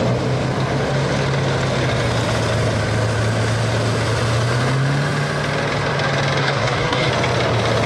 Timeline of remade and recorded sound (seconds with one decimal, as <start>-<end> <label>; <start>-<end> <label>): 0.0-6.4 recorded; 6.4-7.1 remade; 7.1-7.9 recorded